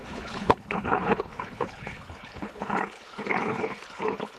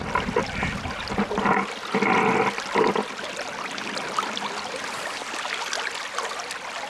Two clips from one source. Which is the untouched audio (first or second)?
second